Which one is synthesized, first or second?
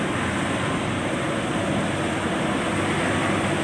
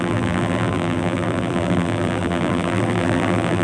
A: second